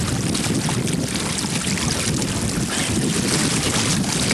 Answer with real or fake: real